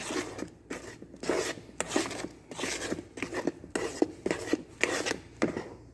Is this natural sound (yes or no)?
yes